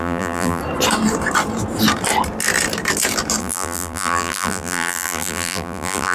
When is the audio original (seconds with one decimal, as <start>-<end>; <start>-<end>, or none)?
0.6-3.4